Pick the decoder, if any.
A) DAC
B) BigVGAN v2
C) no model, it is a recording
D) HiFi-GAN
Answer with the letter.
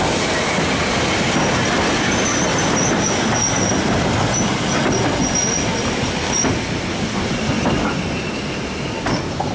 C